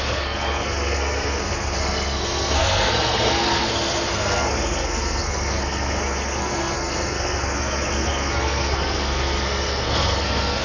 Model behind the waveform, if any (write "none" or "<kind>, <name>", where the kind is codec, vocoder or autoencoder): codec, SNAC